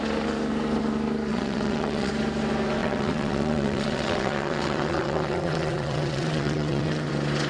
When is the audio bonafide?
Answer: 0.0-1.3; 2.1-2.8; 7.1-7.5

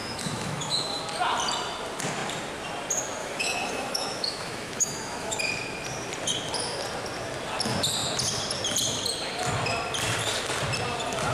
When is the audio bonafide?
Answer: 1.0-3.2; 5.4-11.3

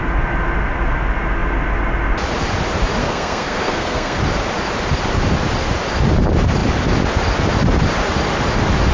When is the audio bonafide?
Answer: 0.0-3.0; 4.2-8.9